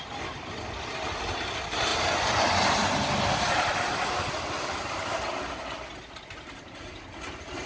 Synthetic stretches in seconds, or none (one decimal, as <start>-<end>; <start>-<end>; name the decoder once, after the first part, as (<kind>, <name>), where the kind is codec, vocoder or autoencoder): none